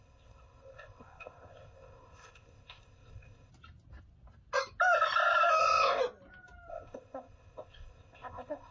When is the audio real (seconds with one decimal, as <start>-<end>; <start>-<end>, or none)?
3.5-5.6; 6.0-6.7